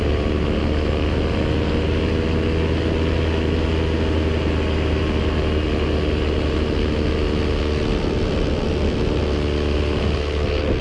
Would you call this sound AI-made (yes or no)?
no